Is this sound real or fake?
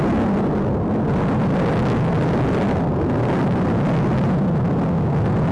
real